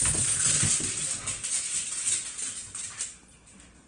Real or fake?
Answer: real